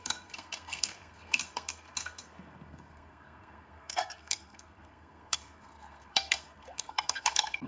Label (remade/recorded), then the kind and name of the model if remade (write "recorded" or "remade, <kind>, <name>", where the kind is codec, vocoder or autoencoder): remade, codec, SNAC